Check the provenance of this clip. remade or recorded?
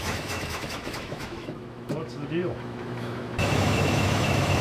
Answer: remade